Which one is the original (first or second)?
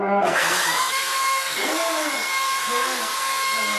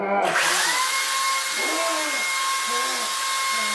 second